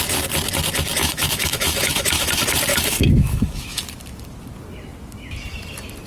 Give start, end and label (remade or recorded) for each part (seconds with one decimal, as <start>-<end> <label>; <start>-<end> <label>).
0.0-1.0 recorded; 1.0-2.3 remade; 2.3-2.7 recorded; 2.7-3.8 remade; 3.8-6.1 recorded